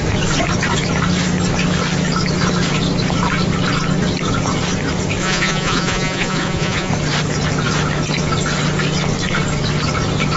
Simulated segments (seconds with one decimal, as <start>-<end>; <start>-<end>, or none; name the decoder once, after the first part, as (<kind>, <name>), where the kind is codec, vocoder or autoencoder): 5.2-6.9 (vocoder, Vocos)